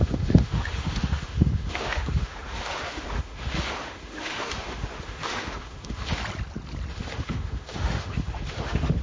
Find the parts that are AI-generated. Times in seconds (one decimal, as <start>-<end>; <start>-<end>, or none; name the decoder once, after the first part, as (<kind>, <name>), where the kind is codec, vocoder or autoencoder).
0.0-6.2 (autoencoder, DAC-VAE); 6.9-9.0

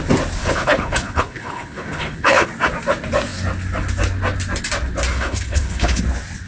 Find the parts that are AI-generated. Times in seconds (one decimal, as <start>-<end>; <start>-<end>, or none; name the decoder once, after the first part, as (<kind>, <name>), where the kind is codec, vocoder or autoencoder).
0.4-2.5 (codec, HILCodec); 5.1-6.0

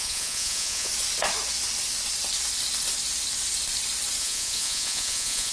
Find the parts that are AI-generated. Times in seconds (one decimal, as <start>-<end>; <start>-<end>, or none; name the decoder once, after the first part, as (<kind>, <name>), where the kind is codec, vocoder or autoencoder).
0.0-0.9 (vocoder, Vocos); 4.2-5.5

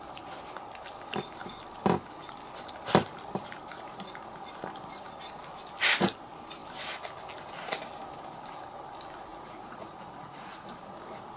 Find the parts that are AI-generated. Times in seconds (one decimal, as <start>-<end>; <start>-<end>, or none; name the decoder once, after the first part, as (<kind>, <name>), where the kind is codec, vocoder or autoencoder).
3.7-4.3 (vocoder, Vocos); 9.3-10.7

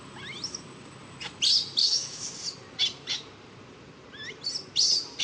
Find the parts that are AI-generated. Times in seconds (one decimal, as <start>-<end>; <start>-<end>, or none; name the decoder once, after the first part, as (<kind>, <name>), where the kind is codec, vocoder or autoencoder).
1.8-2.3 (autoencoder, DAC-VAE)